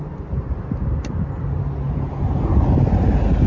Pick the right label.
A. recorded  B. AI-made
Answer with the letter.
A